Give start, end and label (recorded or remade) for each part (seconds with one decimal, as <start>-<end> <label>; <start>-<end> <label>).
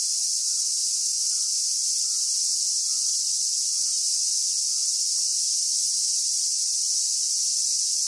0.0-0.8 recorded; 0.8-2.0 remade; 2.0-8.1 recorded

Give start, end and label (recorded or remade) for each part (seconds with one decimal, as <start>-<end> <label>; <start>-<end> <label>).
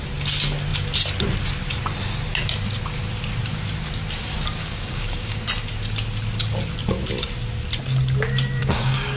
0.0-4.6 recorded; 4.6-5.4 remade; 5.4-8.6 recorded; 8.6-9.2 remade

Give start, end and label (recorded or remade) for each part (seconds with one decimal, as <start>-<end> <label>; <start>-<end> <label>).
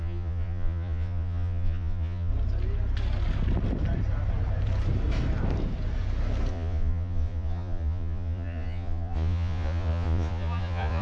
0.0-2.3 remade; 2.3-6.5 recorded; 6.5-11.0 remade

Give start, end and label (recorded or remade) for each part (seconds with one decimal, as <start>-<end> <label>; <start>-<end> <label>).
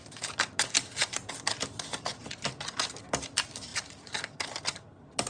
0.0-5.3 recorded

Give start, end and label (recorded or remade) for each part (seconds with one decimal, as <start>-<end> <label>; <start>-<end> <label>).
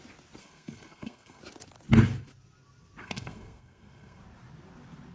0.0-0.4 recorded; 0.4-1.4 remade; 1.4-3.0 recorded; 3.0-4.2 remade; 4.2-5.1 recorded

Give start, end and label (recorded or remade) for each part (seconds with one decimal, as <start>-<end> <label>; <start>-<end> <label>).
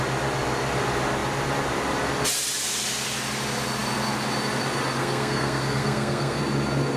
0.0-5.0 recorded; 5.0-6.4 remade; 6.4-7.0 recorded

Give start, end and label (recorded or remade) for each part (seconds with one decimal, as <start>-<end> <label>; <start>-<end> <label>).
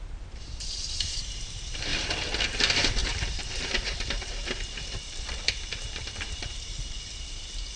0.0-1.9 remade; 1.9-2.5 recorded; 2.5-7.8 remade